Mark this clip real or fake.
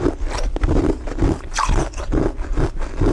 real